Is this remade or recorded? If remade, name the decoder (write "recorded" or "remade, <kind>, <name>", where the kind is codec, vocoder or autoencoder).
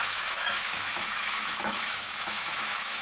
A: remade, autoencoder, DAC-VAE